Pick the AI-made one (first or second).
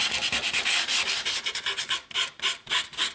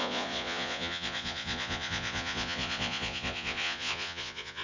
second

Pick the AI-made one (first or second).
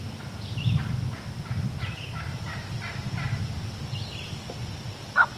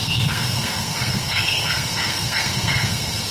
second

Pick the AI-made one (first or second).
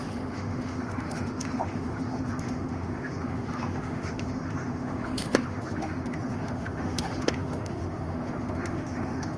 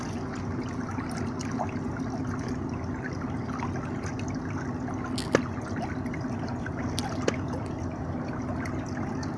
first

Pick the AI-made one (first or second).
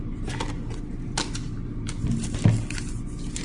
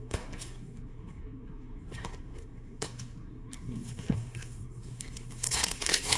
second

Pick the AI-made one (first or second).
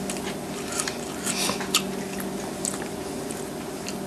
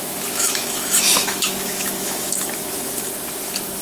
second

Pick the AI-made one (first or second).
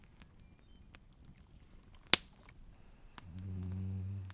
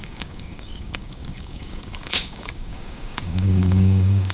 second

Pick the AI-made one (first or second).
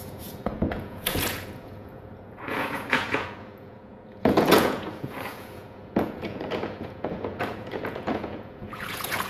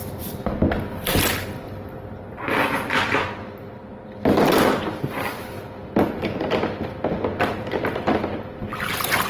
first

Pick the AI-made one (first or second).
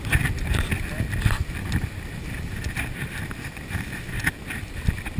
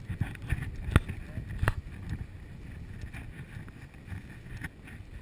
first